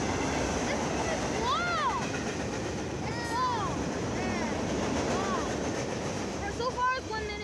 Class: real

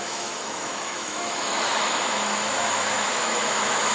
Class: fake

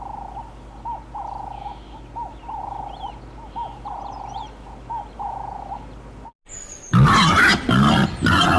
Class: real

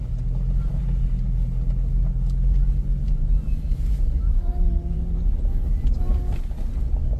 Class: real